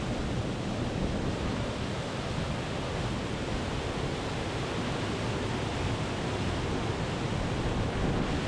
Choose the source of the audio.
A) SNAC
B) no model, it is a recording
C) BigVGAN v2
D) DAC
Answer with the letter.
B